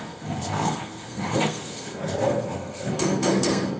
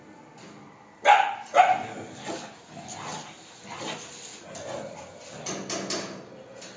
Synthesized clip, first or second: first